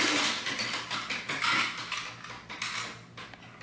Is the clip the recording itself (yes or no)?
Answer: yes